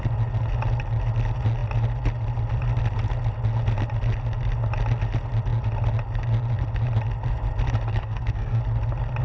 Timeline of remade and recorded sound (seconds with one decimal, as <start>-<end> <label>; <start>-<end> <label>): 0.0-7.9 recorded; 7.9-8.6 remade; 8.6-9.2 recorded